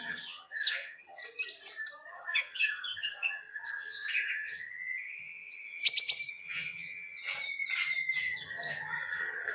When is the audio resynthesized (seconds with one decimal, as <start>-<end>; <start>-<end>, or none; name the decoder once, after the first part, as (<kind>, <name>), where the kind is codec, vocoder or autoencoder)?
0.0-1.2 (vocoder, HiFi-GAN); 2.1-5.8; 6.3-7.3; 8.2-9.5